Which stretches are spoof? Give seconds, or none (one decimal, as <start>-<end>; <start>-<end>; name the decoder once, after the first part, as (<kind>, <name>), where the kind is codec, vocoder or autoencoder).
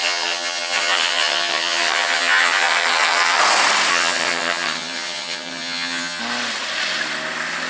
0.0-3.4 (vocoder, HiFi-GAN); 3.9-6.2